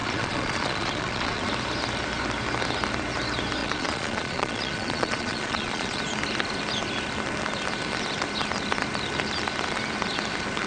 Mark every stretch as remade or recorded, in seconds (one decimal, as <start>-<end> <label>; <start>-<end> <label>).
0.0-1.5 remade; 1.5-3.6 recorded; 3.6-6.0 remade; 6.0-10.7 recorded